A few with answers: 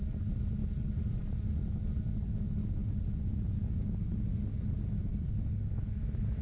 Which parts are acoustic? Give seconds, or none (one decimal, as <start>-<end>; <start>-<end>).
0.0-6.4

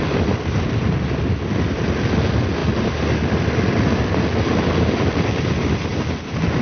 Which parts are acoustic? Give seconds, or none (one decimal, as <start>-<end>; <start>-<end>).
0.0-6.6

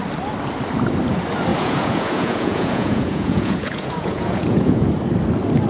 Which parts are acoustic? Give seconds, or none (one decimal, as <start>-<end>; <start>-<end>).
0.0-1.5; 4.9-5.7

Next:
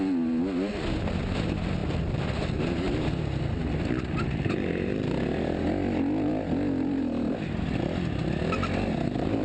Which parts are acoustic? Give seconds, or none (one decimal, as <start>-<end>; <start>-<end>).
0.0-9.4